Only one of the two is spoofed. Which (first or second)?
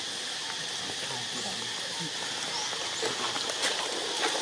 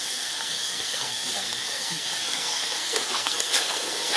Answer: second